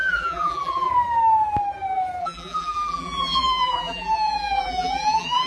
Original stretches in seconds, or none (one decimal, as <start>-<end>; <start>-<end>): 0.9-2.2